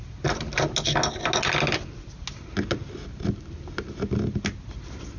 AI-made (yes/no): no